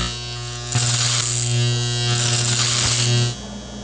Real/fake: real